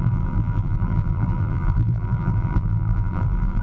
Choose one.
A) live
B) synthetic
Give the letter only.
B